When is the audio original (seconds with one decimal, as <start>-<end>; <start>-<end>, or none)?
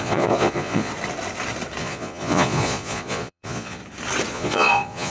0.9-1.8; 3.8-4.3